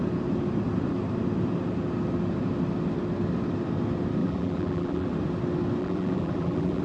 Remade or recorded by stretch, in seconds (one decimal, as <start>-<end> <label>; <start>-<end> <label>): 0.0-4.2 recorded; 4.2-5.1 remade; 5.1-5.8 recorded; 5.8-6.8 remade